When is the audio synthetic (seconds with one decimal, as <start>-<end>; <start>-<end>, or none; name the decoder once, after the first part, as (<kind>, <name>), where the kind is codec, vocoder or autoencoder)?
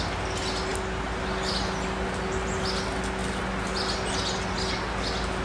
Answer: none